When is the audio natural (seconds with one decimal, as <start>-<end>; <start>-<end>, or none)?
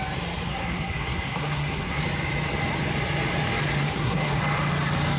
0.0-0.5; 2.0-3.8; 4.4-5.2